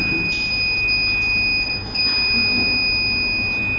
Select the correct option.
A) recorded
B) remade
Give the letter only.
A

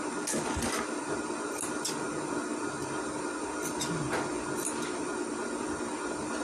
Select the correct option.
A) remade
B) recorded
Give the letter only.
B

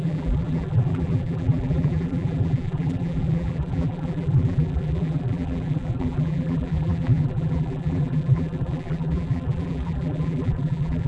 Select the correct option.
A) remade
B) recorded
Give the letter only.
A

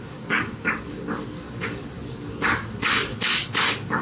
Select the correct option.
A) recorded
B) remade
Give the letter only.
B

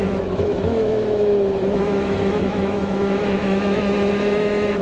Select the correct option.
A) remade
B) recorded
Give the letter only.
A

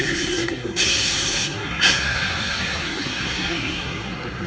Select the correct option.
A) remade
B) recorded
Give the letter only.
A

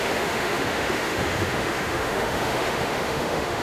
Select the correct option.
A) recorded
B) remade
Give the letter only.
B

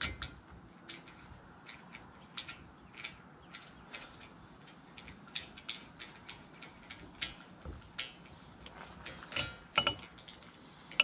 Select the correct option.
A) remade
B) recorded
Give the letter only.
B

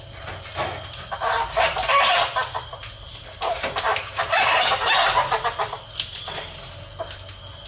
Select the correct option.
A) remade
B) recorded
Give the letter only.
B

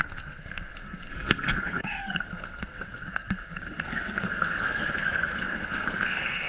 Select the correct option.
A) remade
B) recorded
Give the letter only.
A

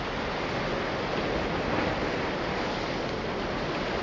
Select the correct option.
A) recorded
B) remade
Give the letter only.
A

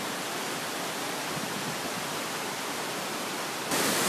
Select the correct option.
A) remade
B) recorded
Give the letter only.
A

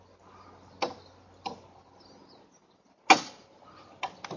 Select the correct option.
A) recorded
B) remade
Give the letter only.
A